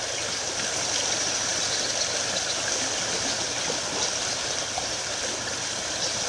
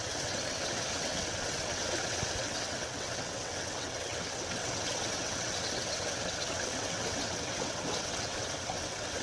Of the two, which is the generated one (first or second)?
second